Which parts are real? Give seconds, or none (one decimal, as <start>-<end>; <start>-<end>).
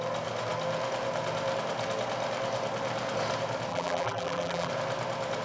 0.0-3.7; 4.7-5.4